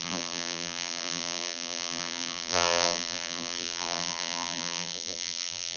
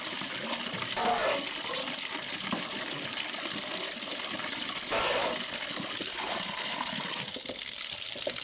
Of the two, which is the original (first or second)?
second